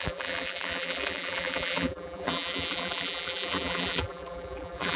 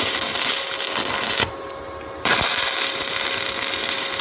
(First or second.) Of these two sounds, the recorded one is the second